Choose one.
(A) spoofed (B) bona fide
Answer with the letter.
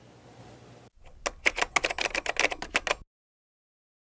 B